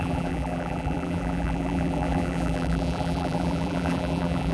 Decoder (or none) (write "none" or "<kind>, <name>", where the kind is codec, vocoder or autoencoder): vocoder, BigVGAN v2